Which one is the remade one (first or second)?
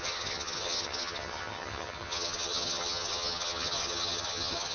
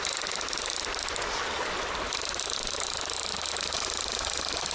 first